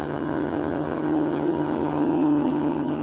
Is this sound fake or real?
fake